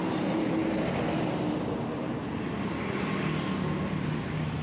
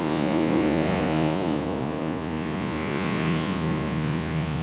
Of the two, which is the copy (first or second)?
second